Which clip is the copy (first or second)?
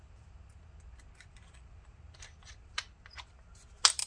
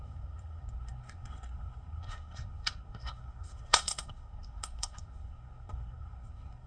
second